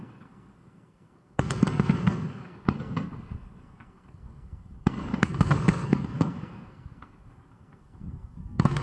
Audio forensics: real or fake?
fake